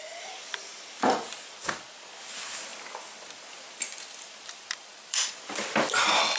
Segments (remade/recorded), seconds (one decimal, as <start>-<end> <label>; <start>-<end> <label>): 0.0-2.7 recorded; 2.7-5.3 remade; 5.3-6.4 recorded